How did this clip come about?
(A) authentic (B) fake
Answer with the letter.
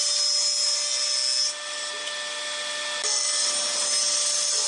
A